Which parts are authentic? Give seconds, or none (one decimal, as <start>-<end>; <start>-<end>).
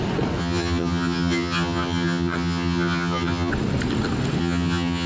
0.0-0.4; 3.5-4.4